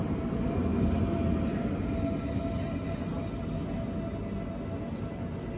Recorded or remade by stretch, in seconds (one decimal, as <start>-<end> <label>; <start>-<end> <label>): 0.0-5.6 recorded